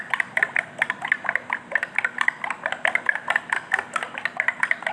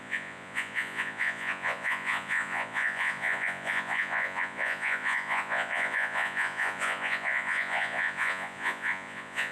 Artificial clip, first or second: second